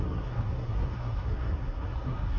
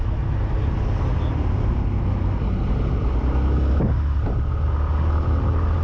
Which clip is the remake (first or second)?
first